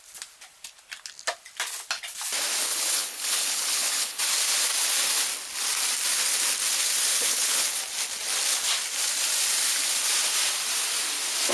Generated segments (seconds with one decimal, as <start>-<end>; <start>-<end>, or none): 2.6-4.2; 7.1-7.8